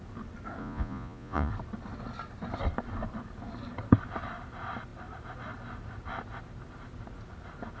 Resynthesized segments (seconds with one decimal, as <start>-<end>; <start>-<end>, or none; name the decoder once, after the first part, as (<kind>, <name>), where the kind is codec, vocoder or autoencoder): 0.6-1.5 (vocoder, Vocos)